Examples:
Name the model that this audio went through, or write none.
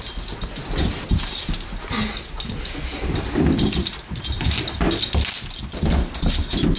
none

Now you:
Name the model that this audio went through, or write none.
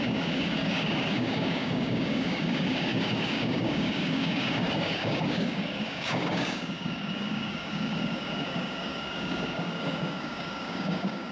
codec, DAC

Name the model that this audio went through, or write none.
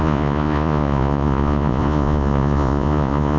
vocoder, Vocos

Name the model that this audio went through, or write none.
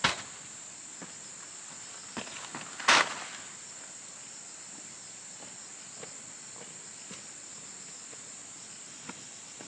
none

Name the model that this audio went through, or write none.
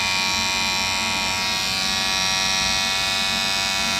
none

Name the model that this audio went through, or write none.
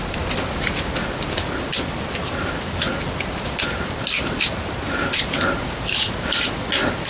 none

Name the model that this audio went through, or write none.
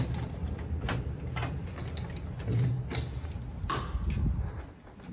none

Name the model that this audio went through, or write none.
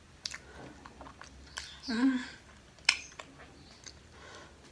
none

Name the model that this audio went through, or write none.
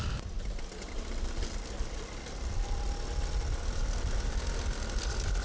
none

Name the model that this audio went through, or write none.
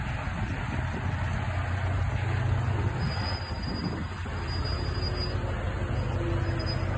none